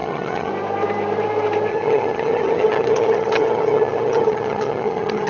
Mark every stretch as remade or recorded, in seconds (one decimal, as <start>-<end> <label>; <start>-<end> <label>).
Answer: 0.0-0.5 remade; 0.5-1.7 recorded; 1.7-5.3 remade

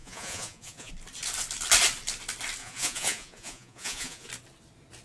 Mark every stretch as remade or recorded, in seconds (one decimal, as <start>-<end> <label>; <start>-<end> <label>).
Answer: 0.0-0.9 remade; 0.9-2.6 recorded; 2.6-4.3 remade; 4.3-5.0 recorded

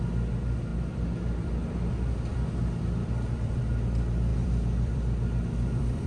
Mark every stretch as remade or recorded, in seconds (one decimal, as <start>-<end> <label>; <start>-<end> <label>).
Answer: 0.0-0.7 recorded; 0.7-1.9 remade; 1.9-2.3 recorded; 2.3-3.6 remade; 3.6-4.3 recorded; 4.3-6.1 remade